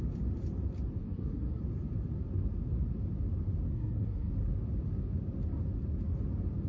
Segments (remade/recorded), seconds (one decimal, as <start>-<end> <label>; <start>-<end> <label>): 0.0-1.0 recorded; 1.0-1.6 remade; 1.6-3.7 recorded; 3.7-4.3 remade; 4.3-6.7 recorded

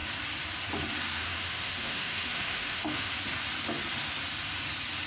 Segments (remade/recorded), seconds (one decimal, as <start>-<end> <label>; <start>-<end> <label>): 0.0-1.2 recorded; 1.2-3.1 remade; 3.1-5.1 recorded

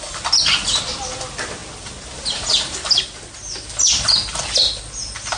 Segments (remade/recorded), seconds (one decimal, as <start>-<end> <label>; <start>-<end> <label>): 0.0-5.4 recorded

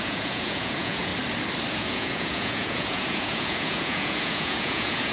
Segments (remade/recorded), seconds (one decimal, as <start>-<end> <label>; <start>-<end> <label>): 0.0-1.1 remade; 1.1-1.7 recorded; 1.7-5.1 remade

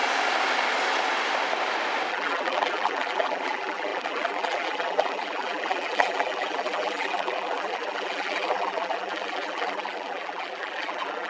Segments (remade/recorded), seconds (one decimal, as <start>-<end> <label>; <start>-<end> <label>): 0.0-2.1 recorded; 2.1-11.3 remade

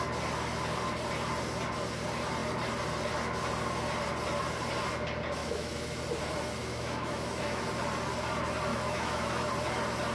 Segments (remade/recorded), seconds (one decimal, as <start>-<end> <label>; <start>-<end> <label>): 0.0-5.4 recorded; 5.4-6.0 remade; 6.0-6.6 recorded; 6.6-7.6 remade; 7.6-8.7 recorded; 8.7-9.5 remade; 9.5-10.1 recorded